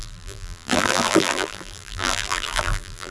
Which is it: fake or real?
fake